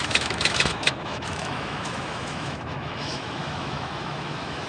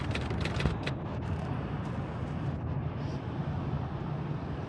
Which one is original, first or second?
second